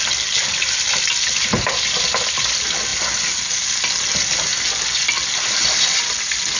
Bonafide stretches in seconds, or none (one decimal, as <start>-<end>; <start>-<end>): 0.0-6.6